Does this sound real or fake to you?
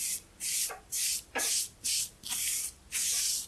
real